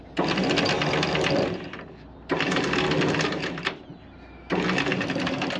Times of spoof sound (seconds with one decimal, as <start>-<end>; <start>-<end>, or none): 0.0-3.9; 4.8-5.6

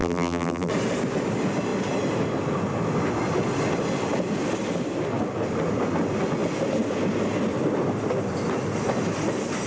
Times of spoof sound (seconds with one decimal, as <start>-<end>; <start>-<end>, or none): 0.0-0.7

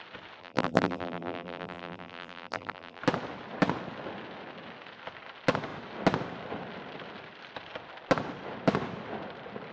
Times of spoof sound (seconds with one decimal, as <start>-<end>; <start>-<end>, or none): 0.4-3.0

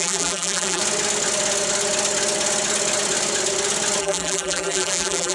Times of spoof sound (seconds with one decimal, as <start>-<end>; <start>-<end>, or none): 0.0-0.8; 4.0-5.3

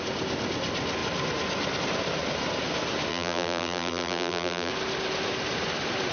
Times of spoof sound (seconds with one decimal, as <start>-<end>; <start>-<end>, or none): 3.1-4.7